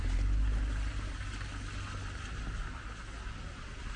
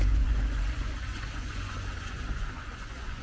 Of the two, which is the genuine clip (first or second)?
first